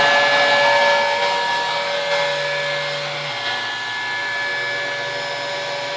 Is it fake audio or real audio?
real